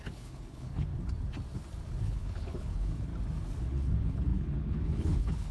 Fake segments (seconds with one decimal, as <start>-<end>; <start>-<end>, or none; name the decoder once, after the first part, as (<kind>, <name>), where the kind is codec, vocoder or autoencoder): 0.0-0.9 (codec, HILCodec); 2.0-3.1; 3.6-5.5